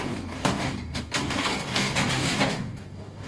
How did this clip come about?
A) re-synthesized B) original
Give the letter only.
A